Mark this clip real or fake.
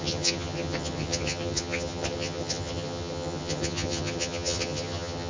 fake